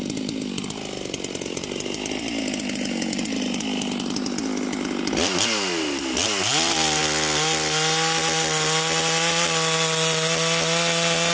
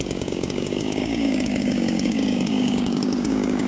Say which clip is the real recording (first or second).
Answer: first